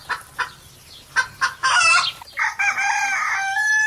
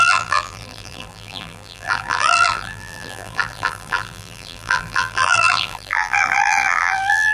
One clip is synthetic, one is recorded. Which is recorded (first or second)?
first